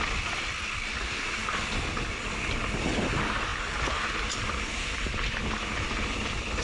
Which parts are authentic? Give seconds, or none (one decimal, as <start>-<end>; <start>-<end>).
0.0-6.6